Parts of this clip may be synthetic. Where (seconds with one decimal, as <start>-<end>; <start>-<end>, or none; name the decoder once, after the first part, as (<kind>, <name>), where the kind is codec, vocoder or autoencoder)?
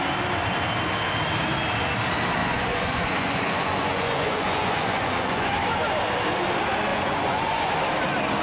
2.4-5.5 (vocoder, Vocos); 6.9-7.7